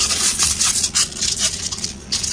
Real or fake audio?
fake